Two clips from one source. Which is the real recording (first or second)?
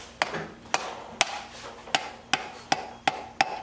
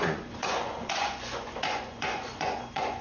first